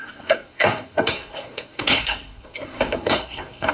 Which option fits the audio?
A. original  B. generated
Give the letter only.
B